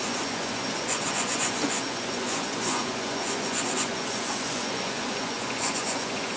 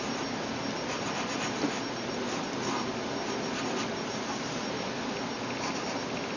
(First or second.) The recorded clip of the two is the second